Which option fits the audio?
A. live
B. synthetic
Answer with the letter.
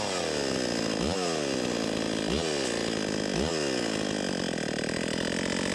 A